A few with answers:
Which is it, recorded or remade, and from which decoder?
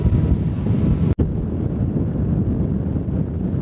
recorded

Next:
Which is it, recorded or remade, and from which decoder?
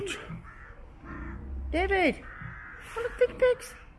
recorded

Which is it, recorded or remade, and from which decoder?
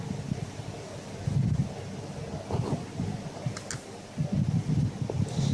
recorded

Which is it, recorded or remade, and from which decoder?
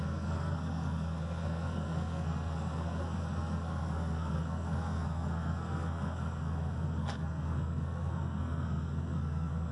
remade, codec, SNAC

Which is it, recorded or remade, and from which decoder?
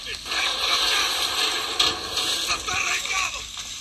recorded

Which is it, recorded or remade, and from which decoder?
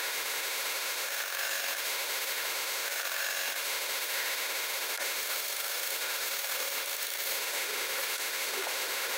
remade, autoencoder, DAC-VAE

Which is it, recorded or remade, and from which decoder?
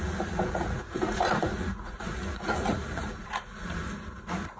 remade, vocoder, Vocos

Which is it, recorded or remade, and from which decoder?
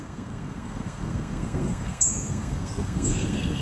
remade, codec, SNAC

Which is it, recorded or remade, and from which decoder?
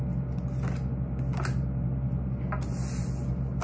recorded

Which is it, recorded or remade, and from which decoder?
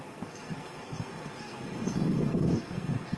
remade, codec, SNAC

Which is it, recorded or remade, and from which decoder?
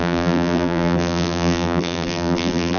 remade, vocoder, BigVGAN v2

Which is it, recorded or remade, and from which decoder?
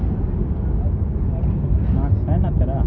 recorded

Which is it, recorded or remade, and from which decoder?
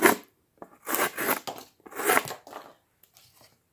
recorded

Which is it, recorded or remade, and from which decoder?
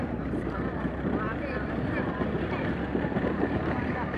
remade, vocoder, BigVGAN v2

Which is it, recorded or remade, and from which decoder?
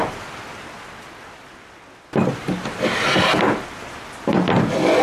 recorded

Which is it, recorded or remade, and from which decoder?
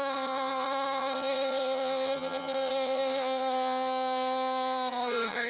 remade, vocoder, HiFi-GAN